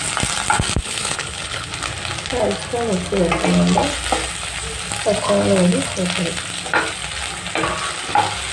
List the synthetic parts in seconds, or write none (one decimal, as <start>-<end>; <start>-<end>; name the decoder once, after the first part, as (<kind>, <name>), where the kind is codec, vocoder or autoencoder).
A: 0.8-1.7 (codec, HILCodec)